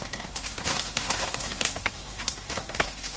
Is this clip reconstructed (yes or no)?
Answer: yes